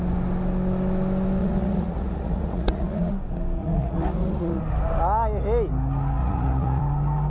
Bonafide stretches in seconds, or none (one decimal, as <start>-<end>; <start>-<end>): 0.0-1.4; 3.1-3.6; 4.6-6.2; 6.8-7.3